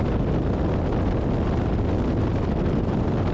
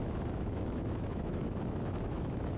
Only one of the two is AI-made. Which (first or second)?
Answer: second